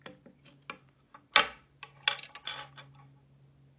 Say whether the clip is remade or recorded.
recorded